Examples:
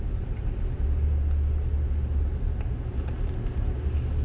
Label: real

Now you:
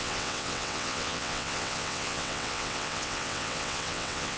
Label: fake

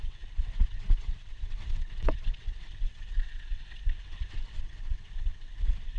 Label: fake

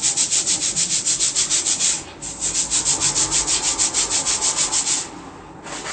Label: real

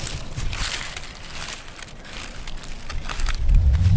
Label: real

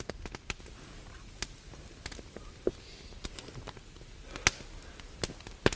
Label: real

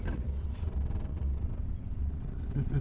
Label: fake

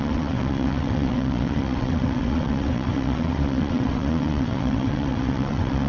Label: fake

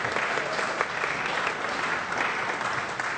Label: real